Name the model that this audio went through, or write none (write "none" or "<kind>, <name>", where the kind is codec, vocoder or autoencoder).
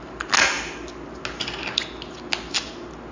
none